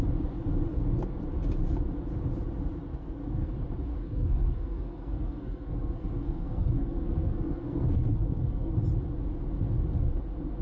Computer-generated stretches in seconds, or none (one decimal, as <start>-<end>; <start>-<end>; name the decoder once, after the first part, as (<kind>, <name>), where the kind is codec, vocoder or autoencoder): 0.7-1.2 (codec, SNAC); 2.9-3.5; 3.9-8.7